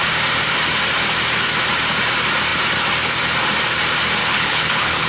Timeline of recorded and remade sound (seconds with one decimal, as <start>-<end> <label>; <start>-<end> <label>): 0.0-4.2 recorded; 4.2-5.1 remade